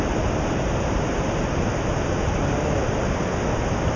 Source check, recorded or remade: recorded